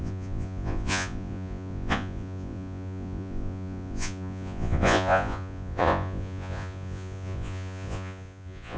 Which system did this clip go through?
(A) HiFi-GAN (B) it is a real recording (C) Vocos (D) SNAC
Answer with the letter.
C